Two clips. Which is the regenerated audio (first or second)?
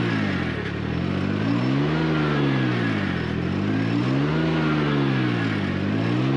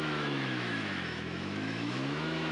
second